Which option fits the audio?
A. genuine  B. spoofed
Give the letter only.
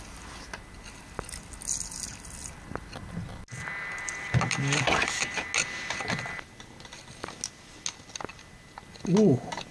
A